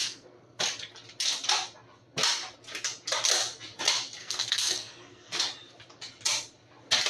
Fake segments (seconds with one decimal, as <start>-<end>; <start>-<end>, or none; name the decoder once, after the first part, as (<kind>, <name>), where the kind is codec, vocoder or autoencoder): 0.0-0.6 (codec, SNAC); 4.2-5.4